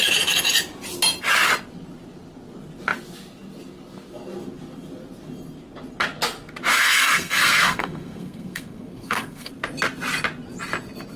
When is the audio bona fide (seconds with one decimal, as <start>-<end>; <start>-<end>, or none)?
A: 0.0-6.7; 9.5-11.2

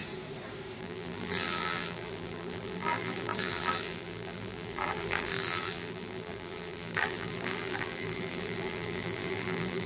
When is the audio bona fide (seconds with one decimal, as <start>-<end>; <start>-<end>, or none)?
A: 0.0-0.8

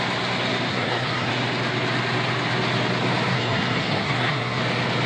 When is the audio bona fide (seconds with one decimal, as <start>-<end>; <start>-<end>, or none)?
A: 0.0-0.7; 1.3-3.3; 4.6-5.1

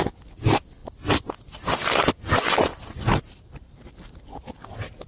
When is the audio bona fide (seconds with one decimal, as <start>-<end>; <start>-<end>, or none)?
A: 0.0-5.1